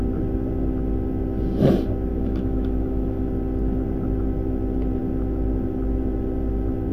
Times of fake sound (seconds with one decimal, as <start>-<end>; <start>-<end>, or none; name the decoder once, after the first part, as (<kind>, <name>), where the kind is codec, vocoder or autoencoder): 2.1-3.3 (autoencoder, DAC-VAE)